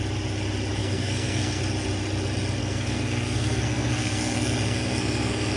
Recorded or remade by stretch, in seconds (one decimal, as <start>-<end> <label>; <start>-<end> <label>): 0.0-0.8 recorded; 0.8-1.6 remade; 1.6-2.6 recorded; 2.6-5.6 remade